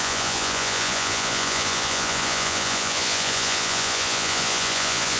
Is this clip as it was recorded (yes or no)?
no